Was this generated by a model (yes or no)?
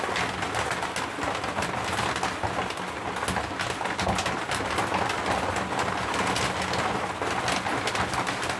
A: no